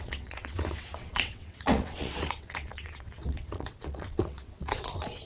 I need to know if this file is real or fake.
fake